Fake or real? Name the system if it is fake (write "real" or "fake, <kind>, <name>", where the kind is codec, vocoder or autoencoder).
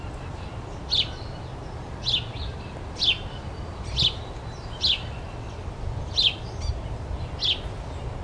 real